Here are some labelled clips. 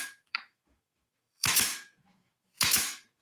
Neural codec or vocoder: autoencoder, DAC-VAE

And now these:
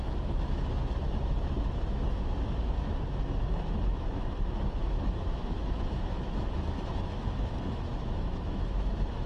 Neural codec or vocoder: autoencoder, DAC-VAE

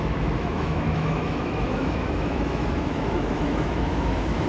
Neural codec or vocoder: autoencoder, DAC-VAE